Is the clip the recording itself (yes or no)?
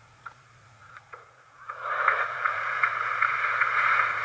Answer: no